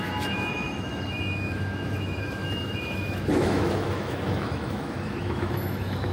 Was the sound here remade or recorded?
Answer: remade